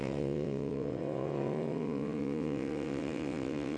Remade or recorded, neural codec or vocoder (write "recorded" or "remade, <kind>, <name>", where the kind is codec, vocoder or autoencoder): remade, vocoder, WaveNeXt